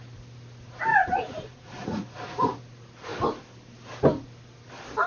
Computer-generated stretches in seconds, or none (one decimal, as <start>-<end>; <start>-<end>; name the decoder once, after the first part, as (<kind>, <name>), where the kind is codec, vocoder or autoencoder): 0.9-2.6 (vocoder, Vocos)